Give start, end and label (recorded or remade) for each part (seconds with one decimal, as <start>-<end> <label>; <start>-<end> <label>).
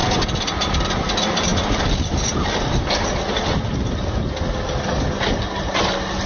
0.0-6.3 recorded